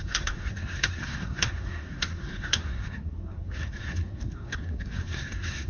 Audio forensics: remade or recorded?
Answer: remade